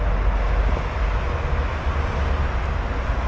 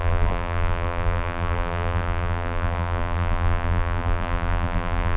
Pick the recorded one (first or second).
first